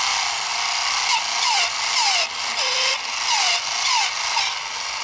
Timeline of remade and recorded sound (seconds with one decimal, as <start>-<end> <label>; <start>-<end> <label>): 0.0-5.0 recorded